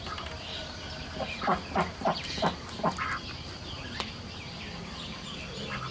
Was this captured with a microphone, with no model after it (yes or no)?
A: yes